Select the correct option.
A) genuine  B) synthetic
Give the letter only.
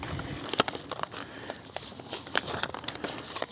A